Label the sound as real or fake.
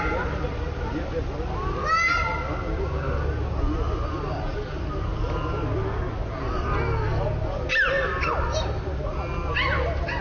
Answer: real